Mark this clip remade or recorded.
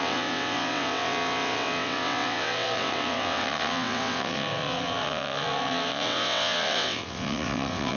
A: remade